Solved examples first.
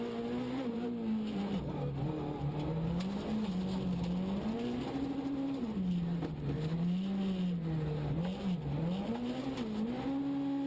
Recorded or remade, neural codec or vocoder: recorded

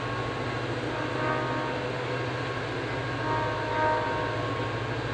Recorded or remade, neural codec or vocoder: recorded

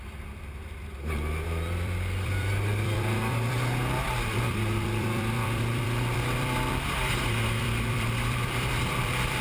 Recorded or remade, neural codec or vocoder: remade, vocoder, BigVGAN v2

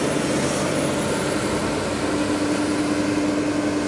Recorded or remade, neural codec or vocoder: recorded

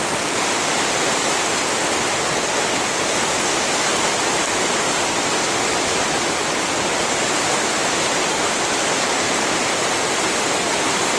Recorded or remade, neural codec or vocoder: recorded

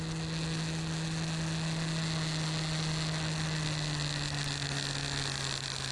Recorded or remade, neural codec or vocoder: recorded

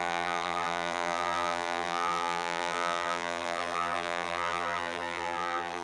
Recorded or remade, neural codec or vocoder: remade, vocoder, BigVGAN v2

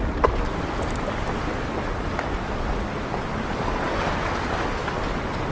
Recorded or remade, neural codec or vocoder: recorded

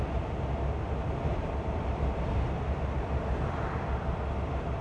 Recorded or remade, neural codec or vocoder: remade, vocoder, BigVGAN v2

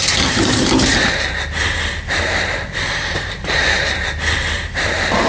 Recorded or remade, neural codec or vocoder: remade, vocoder, BigVGAN v2